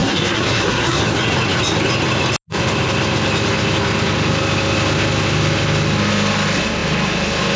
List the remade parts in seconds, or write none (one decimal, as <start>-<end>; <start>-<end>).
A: 0.0-1.0